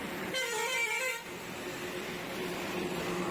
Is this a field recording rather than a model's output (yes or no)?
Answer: no